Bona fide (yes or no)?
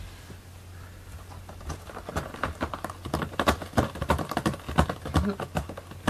yes